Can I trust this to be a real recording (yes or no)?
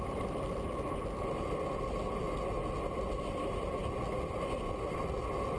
yes